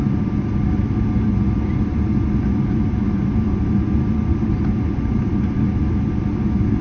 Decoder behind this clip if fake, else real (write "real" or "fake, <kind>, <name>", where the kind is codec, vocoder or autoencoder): real